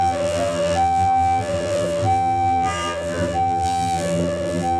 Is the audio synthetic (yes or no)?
yes